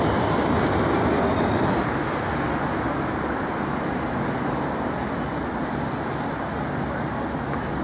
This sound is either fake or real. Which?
real